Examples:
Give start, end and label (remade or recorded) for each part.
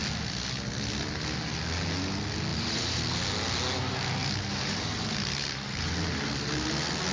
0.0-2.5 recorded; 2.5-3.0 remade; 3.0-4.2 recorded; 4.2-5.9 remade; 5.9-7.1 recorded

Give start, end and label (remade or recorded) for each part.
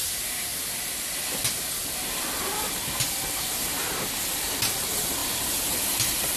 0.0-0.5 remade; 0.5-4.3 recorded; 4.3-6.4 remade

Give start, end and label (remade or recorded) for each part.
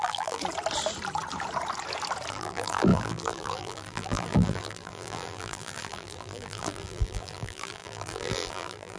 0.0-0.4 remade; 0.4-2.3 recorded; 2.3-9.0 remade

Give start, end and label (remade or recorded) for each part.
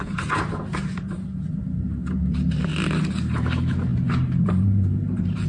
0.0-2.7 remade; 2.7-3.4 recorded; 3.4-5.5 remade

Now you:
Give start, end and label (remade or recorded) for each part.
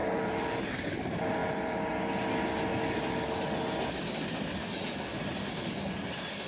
0.0-0.7 remade; 0.7-1.4 recorded; 1.4-2.1 remade; 2.1-5.1 recorded; 5.1-5.9 remade; 5.9-6.5 recorded